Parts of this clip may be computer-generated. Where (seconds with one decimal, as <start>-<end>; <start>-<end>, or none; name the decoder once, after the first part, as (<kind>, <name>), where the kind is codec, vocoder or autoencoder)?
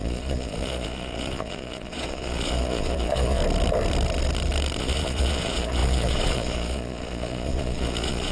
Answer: 0.0-3.4 (vocoder, Vocos); 4.8-8.3